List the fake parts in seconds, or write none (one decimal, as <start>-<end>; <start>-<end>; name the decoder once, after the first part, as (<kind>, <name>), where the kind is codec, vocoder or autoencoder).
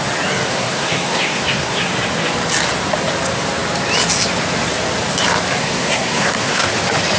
0.5-1.9 (codec, SNAC); 5.6-6.7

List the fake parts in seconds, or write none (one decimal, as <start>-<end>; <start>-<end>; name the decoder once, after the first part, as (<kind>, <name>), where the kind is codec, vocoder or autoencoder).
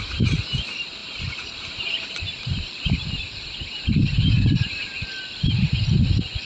1.0-4.9 (vocoder, BigVGAN v2)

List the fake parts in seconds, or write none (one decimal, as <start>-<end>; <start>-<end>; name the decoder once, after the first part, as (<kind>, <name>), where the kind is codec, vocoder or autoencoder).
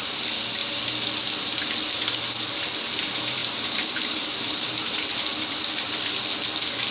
0.0-0.6 (vocoder, BigVGAN v2); 3.0-5.3